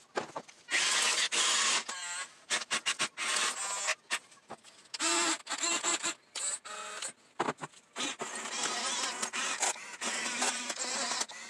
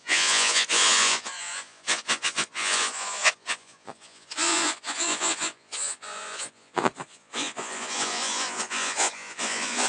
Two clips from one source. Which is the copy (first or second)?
second